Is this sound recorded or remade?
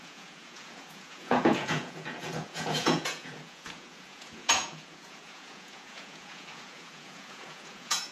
remade